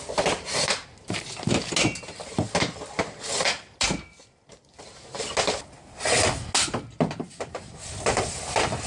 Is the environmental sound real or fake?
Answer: real